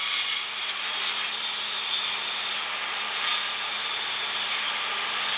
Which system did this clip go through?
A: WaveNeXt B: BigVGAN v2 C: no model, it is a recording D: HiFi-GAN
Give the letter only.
C